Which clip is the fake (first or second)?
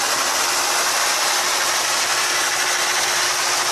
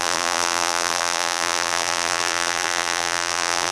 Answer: second